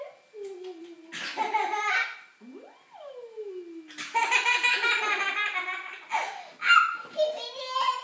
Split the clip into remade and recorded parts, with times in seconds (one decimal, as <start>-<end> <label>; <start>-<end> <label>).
0.0-8.0 recorded